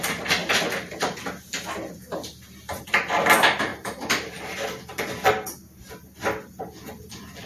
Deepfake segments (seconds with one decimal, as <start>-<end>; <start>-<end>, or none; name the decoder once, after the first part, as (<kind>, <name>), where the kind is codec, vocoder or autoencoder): 0.4-1.3 (vocoder, BigVGAN v2); 3.7-5.1